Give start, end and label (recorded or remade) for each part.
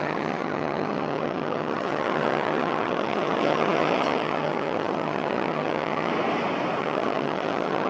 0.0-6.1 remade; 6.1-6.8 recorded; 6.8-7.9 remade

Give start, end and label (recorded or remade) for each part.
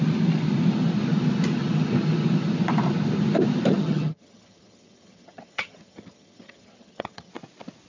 0.0-3.7 recorded; 3.7-7.3 remade; 7.3-7.9 recorded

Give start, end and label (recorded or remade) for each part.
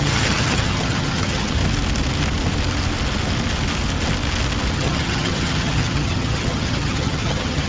0.0-1.6 remade; 1.6-4.7 recorded; 4.7-7.7 remade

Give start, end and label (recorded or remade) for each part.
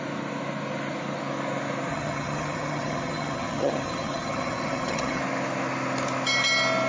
0.0-1.9 recorded; 1.9-5.2 remade; 5.2-6.9 recorded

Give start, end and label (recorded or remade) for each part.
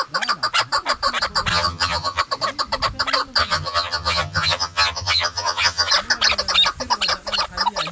0.0-1.5 recorded; 1.5-2.2 remade; 2.2-3.4 recorded; 3.4-5.9 remade; 5.9-7.9 recorded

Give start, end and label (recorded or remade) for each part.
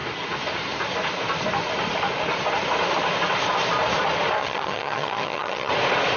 0.0-4.4 recorded; 4.4-5.7 remade; 5.7-6.2 recorded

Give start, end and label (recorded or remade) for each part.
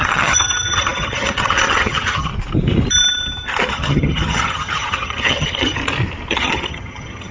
0.0-2.3 remade; 2.3-3.7 recorded; 3.7-5.8 remade; 5.8-6.3 recorded; 6.3-7.3 remade